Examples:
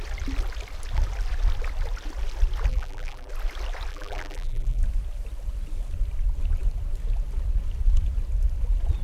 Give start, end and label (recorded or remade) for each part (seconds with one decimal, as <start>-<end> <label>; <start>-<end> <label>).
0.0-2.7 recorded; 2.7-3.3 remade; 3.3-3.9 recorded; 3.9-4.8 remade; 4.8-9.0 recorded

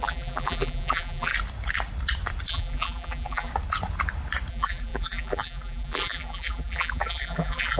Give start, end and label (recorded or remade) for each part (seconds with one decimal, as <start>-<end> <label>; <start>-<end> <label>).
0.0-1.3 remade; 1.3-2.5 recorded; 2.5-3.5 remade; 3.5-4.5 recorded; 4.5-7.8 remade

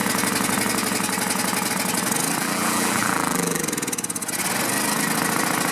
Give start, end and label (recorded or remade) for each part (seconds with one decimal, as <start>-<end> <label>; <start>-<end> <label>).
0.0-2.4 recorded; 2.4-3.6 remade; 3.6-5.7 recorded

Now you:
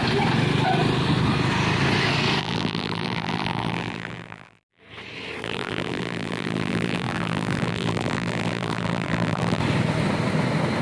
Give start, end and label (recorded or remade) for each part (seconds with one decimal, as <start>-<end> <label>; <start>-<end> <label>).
0.0-2.4 recorded; 2.4-4.8 remade; 4.8-5.4 recorded; 5.4-9.6 remade; 9.6-10.8 recorded

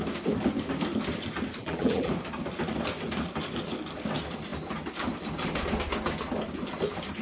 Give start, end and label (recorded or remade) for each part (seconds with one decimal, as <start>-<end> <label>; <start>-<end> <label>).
0.0-1.6 recorded; 1.6-2.1 remade; 2.1-7.2 recorded

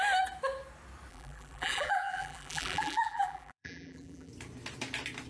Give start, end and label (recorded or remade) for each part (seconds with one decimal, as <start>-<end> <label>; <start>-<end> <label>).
0.0-1.1 recorded; 1.1-4.3 remade; 4.3-5.3 recorded